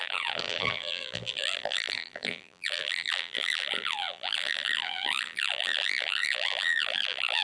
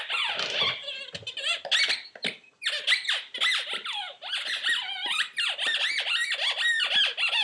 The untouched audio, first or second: second